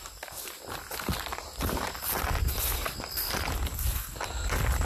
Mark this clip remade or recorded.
recorded